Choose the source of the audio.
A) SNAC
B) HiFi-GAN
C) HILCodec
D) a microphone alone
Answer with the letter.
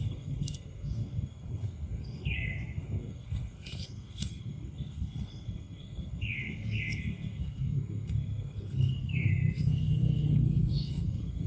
A